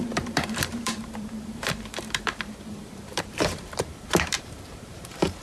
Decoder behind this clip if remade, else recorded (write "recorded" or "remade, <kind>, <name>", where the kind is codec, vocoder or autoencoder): remade, vocoder, BigVGAN v2